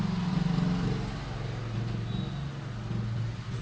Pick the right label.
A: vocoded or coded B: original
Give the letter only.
B